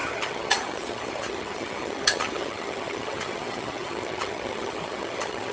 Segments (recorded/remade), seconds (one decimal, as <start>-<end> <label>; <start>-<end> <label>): 0.0-5.5 remade